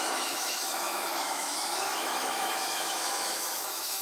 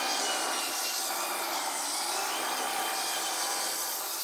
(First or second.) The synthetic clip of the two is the first